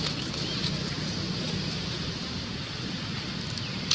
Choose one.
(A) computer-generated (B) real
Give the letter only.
B